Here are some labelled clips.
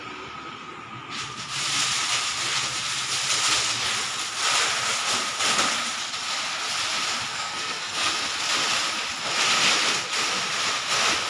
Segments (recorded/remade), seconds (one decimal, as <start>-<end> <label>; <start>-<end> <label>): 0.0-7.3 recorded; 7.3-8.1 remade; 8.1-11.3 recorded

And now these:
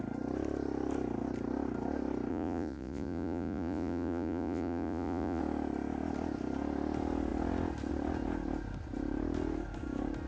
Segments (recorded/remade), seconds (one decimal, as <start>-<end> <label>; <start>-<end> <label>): 0.0-2.3 recorded; 2.3-5.4 remade; 5.4-10.3 recorded

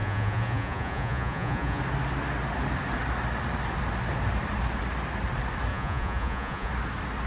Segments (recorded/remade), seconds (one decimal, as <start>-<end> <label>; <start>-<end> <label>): 0.0-1.8 remade; 1.8-5.7 recorded; 5.7-6.7 remade; 6.7-7.3 recorded